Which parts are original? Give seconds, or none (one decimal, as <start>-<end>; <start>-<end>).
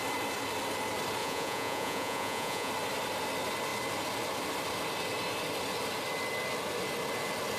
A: 0.0-1.2; 2.7-7.6